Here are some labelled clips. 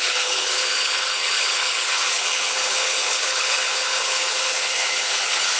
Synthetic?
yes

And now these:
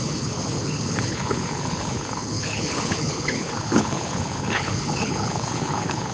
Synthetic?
yes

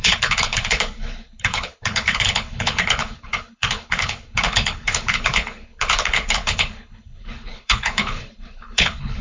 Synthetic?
yes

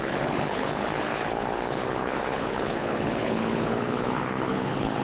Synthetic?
yes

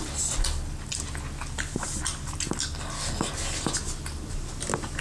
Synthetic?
no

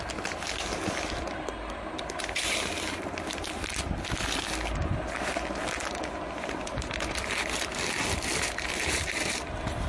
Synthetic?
no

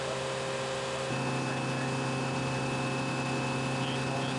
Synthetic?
no